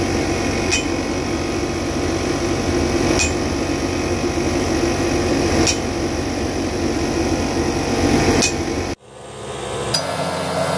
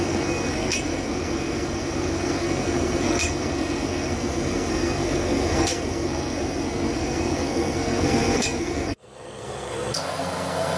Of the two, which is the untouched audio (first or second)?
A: first